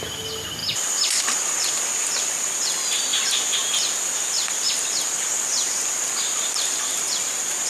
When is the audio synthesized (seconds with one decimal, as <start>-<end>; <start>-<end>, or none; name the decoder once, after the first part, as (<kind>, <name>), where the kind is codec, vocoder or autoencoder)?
none